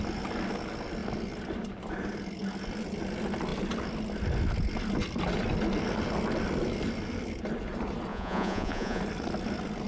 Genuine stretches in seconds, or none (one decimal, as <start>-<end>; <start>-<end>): 0.0-8.1; 9.0-9.9